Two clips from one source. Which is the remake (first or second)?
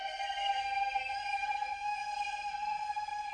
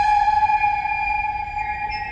first